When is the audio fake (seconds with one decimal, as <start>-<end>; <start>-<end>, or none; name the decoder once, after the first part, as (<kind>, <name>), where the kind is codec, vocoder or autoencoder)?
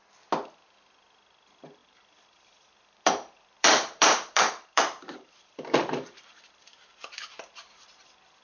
1.8-6.4 (vocoder, BigVGAN v2)